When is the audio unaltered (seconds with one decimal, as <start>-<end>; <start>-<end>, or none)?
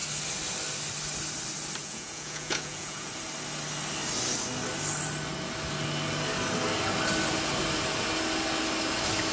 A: 0.0-1.8; 3.1-9.3